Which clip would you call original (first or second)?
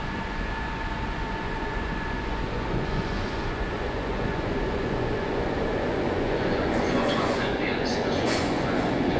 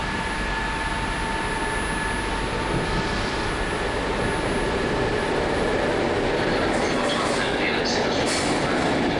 second